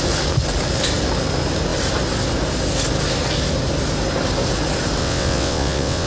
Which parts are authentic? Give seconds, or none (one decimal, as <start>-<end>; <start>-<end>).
0.0-5.0